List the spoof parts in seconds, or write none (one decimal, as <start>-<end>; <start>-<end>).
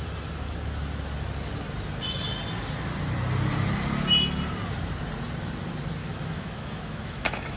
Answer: 6.0-7.6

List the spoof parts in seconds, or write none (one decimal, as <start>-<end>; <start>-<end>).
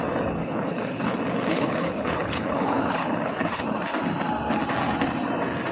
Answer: 0.4-1.1; 1.5-3.8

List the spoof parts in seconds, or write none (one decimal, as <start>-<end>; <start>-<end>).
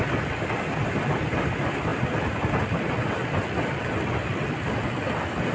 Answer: 1.3-1.9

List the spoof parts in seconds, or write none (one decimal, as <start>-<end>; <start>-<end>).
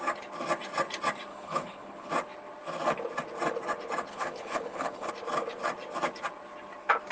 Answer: 1.3-2.1; 4.1-5.1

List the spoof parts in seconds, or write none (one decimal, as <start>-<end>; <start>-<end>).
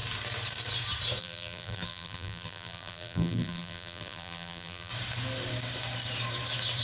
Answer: 1.2-4.9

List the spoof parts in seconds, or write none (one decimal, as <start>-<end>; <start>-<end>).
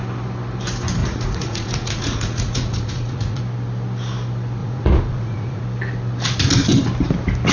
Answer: 1.0-3.4; 4.6-5.6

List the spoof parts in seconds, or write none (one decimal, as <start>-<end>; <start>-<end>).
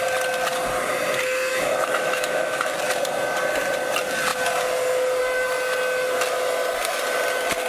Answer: 1.5-2.7